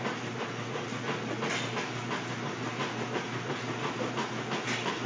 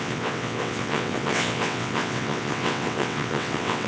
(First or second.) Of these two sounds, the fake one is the second